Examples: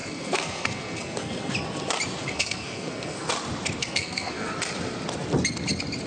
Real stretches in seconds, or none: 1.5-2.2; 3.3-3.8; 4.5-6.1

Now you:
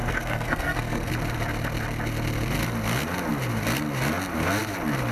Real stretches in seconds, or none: 1.1-5.1

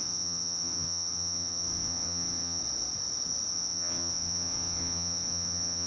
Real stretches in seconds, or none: 2.6-3.5

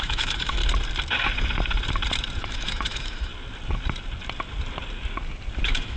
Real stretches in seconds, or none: 0.6-2.4; 3.3-5.6

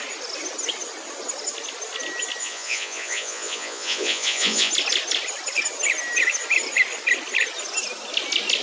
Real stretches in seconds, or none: 0.0-2.4; 4.7-8.6

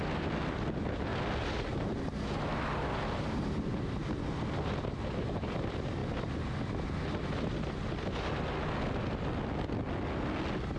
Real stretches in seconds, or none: 0.0-10.8

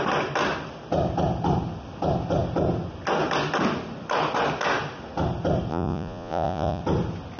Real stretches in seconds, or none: 0.0-5.7; 6.8-7.4